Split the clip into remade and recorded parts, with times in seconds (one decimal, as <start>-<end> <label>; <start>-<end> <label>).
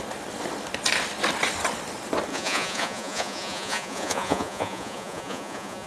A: 0.0-2.3 recorded; 2.3-5.9 remade